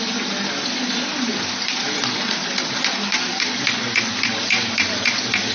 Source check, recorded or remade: recorded